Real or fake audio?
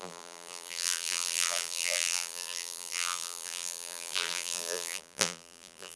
fake